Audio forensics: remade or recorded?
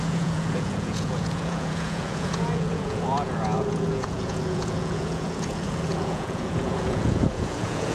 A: remade